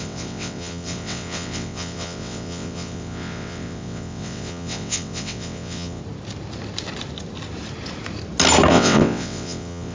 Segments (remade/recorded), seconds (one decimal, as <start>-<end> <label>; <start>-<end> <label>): 0.0-6.0 remade; 6.0-8.7 recorded; 8.7-9.9 remade